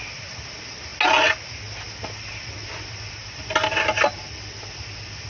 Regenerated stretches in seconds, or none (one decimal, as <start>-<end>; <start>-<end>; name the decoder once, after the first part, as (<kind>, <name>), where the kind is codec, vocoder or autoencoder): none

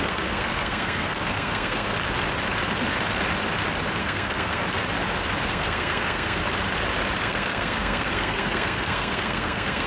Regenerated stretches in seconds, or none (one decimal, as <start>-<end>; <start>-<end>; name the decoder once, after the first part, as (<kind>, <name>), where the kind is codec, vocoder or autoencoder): 0.0-2.0 (codec, SNAC); 4.0-4.6; 5.5-6.4; 7.2-9.9

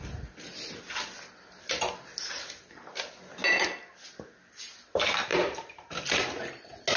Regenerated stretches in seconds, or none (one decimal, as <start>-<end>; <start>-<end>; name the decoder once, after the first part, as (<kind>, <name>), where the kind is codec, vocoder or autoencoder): 5.3-6.2 (vocoder, BigVGAN v2)

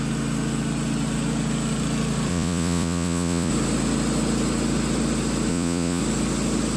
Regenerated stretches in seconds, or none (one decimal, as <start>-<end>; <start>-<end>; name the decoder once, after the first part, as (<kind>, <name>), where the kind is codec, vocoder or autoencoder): 2.3-3.5 (vocoder, Vocos); 5.5-6.0

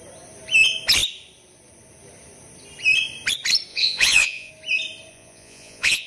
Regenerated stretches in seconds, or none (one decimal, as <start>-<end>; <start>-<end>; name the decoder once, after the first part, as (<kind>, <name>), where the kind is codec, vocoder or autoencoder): 3.7-4.5 (vocoder, Vocos); 5.1-6.1

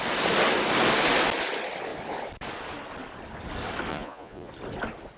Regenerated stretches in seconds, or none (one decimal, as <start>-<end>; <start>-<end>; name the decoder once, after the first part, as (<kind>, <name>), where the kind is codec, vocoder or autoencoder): 3.9-4.5 (vocoder, Vocos)

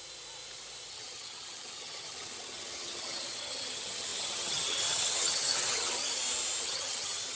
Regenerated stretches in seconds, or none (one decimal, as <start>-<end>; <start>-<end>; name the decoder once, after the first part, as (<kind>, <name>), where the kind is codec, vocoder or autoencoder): 0.9-6.0 (vocoder, HiFi-GAN); 6.6-7.4